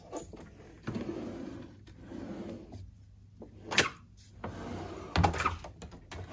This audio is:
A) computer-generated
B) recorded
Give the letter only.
B